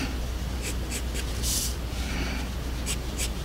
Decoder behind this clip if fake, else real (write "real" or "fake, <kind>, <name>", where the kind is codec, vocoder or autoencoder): real